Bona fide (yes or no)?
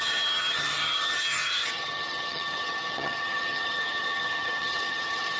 no